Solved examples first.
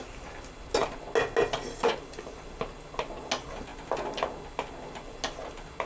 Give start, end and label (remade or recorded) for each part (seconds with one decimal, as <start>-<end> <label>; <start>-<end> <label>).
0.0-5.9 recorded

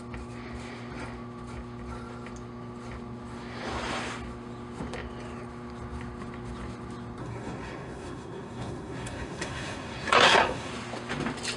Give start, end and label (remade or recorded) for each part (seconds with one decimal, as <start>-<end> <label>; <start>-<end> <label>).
0.0-7.2 recorded; 7.2-10.7 remade; 10.7-11.6 recorded

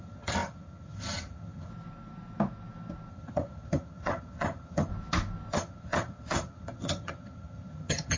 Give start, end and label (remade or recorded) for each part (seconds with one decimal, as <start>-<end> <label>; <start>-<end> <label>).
0.0-1.7 remade; 1.7-3.1 recorded; 3.1-4.9 remade; 4.9-5.5 recorded; 5.5-8.2 remade

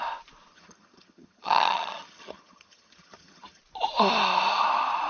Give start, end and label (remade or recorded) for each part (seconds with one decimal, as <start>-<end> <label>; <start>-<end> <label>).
0.0-0.5 recorded; 0.5-3.6 remade; 3.6-5.1 recorded

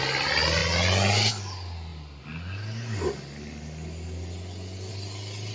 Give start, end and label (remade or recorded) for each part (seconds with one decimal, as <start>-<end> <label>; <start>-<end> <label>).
0.0-5.5 recorded

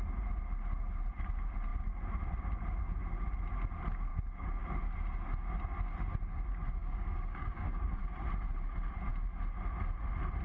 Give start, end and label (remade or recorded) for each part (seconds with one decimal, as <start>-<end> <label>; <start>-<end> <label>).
0.0-6.8 recorded; 6.8-8.0 remade; 8.0-10.4 recorded

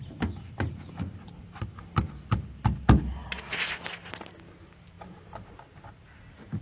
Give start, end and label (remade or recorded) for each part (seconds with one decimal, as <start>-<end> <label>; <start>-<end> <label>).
0.0-6.6 recorded